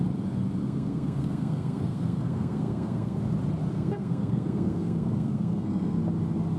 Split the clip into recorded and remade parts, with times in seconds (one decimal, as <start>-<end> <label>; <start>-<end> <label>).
0.0-0.6 recorded; 0.6-3.2 remade; 3.2-3.7 recorded; 3.7-6.0 remade; 6.0-6.6 recorded